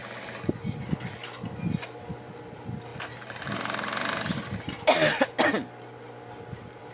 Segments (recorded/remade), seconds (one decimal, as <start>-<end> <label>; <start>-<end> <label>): 0.0-6.9 recorded

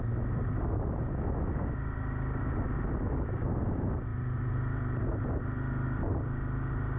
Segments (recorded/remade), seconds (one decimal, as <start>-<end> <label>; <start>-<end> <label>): 0.0-7.0 recorded

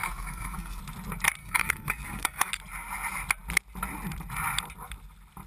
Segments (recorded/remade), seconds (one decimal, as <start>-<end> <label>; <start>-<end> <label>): 0.0-0.8 remade; 0.8-1.4 recorded; 1.4-2.5 remade; 2.5-5.5 recorded

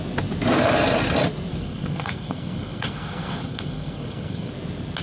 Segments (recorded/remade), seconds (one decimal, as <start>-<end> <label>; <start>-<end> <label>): 0.0-1.5 recorded; 1.5-4.5 remade; 4.5-5.0 recorded

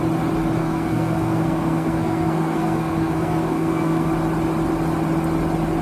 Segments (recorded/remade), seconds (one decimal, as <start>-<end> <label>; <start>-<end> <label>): 0.0-0.6 recorded; 0.6-4.1 remade; 4.1-5.8 recorded